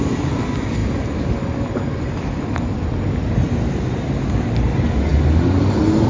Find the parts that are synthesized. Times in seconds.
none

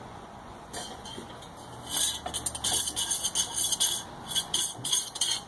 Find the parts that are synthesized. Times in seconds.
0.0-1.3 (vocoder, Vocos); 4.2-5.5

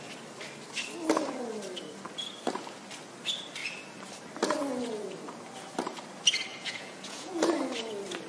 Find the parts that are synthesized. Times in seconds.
6.5-7.5 (vocoder, Vocos)

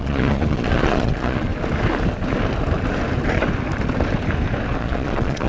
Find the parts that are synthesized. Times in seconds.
0.0-1.5 (vocoder, Vocos); 4.8-5.5

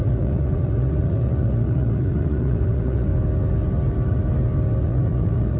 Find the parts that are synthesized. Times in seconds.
0.0-3.1 (vocoder, Vocos); 4.8-5.6

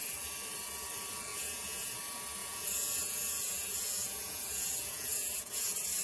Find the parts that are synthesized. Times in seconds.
1.3-2.0 (vocoder, Vocos); 2.4-6.0